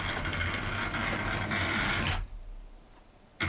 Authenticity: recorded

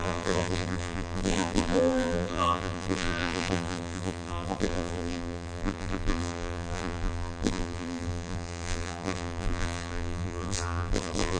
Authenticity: remade